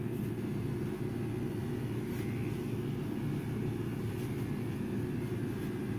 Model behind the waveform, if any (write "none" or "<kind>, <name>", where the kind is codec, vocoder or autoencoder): none